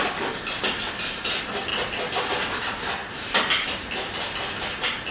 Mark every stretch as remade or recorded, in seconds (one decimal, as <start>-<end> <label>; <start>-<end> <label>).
0.0-5.1 recorded